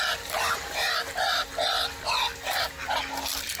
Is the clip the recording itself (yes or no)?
yes